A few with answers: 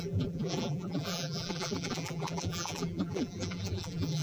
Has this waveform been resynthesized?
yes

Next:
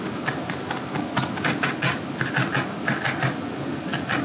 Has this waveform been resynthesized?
no